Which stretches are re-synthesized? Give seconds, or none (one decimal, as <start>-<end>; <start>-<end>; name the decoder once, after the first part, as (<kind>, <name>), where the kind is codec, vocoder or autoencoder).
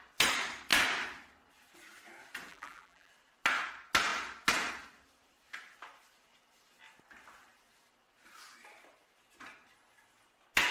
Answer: 2.5-3.1 (vocoder, BigVGAN v2)